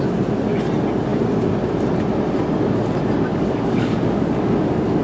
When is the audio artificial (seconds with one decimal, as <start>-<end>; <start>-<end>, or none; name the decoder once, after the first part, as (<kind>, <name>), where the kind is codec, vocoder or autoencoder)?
3.3-5.0 (codec, DAC)